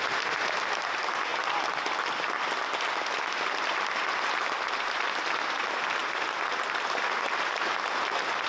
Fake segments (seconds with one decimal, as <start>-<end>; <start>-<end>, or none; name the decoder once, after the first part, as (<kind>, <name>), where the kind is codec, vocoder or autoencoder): none